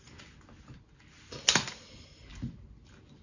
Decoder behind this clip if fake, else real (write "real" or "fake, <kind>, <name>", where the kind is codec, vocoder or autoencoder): real